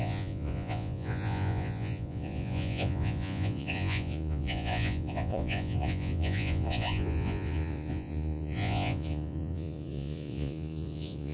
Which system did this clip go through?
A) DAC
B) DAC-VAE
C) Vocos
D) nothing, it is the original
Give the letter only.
C